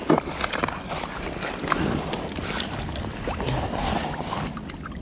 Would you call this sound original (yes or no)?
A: yes